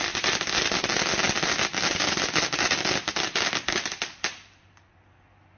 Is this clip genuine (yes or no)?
yes